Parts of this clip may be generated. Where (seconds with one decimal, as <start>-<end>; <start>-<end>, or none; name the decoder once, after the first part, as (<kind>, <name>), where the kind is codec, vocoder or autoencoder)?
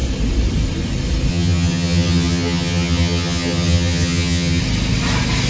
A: 1.3-4.6 (vocoder, HiFi-GAN)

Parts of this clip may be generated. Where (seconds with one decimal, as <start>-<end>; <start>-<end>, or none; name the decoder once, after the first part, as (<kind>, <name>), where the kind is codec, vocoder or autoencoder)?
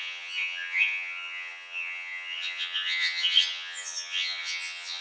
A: 0.0-5.0 (vocoder, HiFi-GAN)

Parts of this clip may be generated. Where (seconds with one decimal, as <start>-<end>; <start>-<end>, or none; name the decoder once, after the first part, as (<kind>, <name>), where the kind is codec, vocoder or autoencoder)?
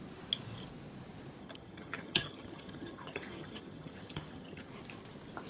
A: 1.4-4.7 (vocoder, HiFi-GAN)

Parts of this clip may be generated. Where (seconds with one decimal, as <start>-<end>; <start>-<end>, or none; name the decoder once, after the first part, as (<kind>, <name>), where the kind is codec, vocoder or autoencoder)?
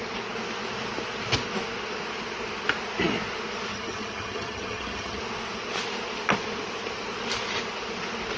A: 3.7-5.2 (vocoder, HiFi-GAN)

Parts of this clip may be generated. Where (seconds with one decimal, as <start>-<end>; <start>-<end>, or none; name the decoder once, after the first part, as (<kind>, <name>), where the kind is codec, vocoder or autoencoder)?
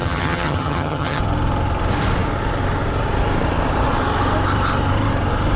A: 0.0-1.2 (vocoder, HiFi-GAN)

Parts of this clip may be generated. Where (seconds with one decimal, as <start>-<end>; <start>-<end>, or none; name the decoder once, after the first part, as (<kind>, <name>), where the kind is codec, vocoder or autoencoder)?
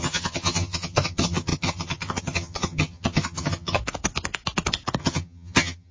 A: 0.0-3.8 (vocoder, HiFi-GAN); 5.0-5.9